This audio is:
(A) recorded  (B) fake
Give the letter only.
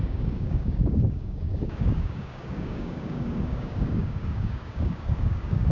B